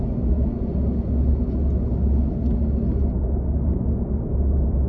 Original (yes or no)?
yes